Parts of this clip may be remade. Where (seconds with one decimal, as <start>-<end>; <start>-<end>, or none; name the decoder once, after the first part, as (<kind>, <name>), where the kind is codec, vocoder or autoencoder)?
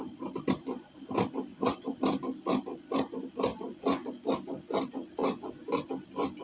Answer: 1.5-2.0 (vocoder, Vocos); 3.5-4.1; 5.2-5.9